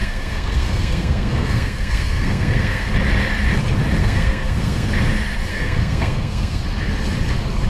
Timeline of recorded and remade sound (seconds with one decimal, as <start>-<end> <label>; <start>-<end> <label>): 0.0-2.9 remade; 2.9-4.0 recorded; 4.0-4.9 remade; 4.9-5.5 recorded; 5.5-6.6 remade; 6.6-7.7 recorded